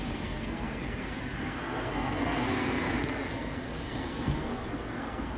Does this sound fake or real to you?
fake